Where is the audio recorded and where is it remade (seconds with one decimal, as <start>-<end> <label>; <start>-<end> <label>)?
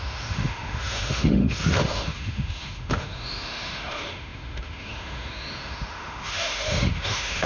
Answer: 0.0-7.5 remade